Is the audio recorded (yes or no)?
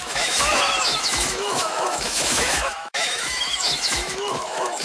no